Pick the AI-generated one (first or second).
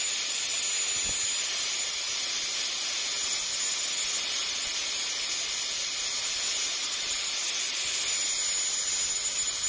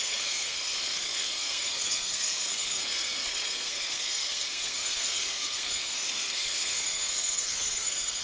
second